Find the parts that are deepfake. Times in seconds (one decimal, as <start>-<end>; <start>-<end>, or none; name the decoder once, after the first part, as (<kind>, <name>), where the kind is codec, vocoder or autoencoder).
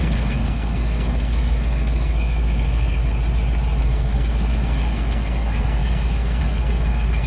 0.0-3.0 (codec, SNAC); 3.8-7.3